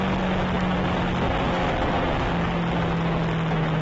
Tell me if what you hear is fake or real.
real